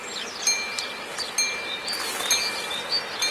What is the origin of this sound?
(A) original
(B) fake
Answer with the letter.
A